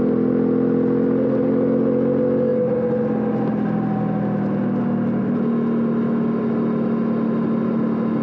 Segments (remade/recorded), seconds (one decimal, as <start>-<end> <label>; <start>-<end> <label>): 0.0-8.2 recorded